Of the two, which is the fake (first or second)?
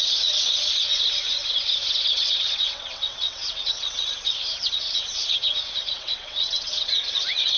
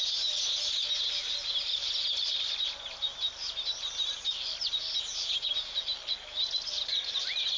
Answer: first